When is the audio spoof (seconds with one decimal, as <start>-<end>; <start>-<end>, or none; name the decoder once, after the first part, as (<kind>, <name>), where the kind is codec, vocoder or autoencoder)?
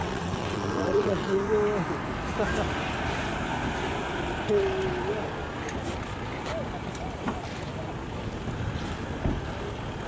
0.0-1.4 (vocoder, WaveNeXt)